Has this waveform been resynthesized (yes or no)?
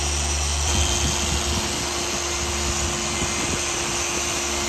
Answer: no